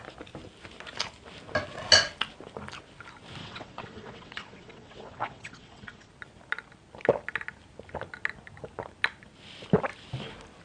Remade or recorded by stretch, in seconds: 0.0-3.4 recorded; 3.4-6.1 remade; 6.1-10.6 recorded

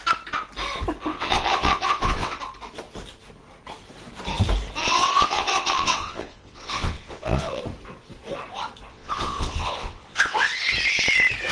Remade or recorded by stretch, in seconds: 0.0-1.1 recorded; 1.1-2.4 remade; 2.4-4.8 recorded; 4.8-7.6 remade; 7.6-8.9 recorded; 8.9-10.5 remade; 10.5-11.5 recorded

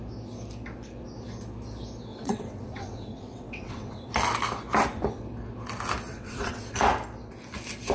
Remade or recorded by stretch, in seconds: 0.0-2.1 recorded; 2.1-4.1 remade; 4.1-6.1 recorded; 6.1-6.6 remade; 6.6-7.9 recorded

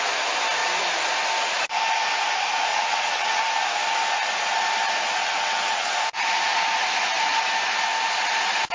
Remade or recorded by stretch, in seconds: 0.0-2.7 recorded; 2.7-3.4 remade; 3.4-5.2 recorded; 5.2-5.9 remade; 5.9-8.7 recorded

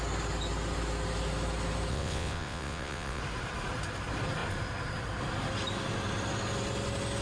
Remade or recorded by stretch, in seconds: 0.0-1.9 recorded; 1.9-3.2 remade; 3.2-7.2 recorded